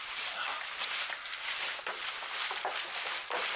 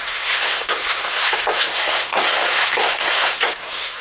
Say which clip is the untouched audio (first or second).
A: first